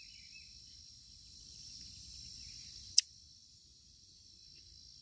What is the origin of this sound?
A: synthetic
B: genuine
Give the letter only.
B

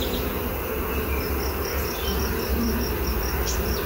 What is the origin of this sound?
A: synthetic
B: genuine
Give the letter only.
B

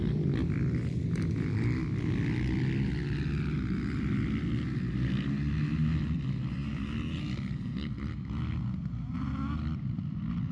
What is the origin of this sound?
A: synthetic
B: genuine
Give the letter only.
B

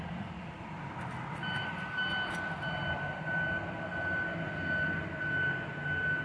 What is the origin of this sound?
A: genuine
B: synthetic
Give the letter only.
A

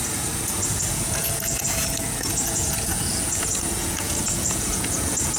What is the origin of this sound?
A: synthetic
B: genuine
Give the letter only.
A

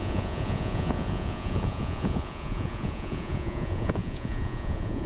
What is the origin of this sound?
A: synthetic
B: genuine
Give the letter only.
A